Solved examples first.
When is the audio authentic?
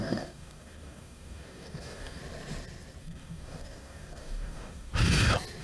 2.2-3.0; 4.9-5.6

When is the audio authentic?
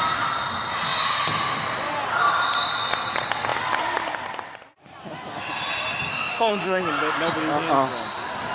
0.0-6.1; 6.8-8.5